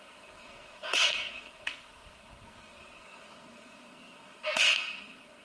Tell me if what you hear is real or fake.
fake